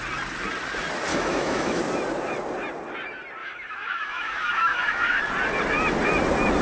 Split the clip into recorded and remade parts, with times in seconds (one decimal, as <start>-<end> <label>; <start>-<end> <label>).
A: 0.0-1.1 recorded; 1.1-1.8 remade; 1.8-3.4 recorded; 3.4-5.2 remade; 5.2-6.6 recorded